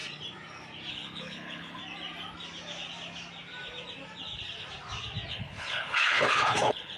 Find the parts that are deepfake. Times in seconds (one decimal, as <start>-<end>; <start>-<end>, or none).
0.9-1.8; 5.3-7.0